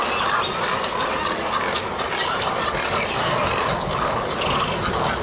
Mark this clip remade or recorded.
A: recorded